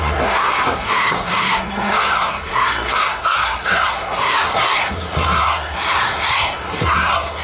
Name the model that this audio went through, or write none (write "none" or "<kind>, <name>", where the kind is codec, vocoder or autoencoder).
codec, SNAC